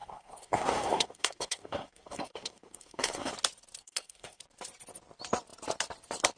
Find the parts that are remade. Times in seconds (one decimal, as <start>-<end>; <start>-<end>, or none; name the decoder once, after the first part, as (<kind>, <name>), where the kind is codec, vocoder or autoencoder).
0.0-3.3 (codec, SNAC); 3.8-4.4